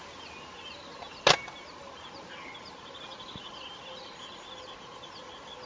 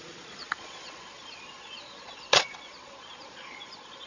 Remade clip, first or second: second